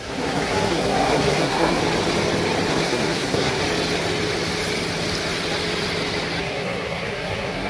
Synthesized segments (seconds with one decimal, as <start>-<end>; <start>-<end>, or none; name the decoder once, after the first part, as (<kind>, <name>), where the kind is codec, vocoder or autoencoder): 0.0-1.8 (codec, SNAC); 2.7-3.6; 6.4-7.7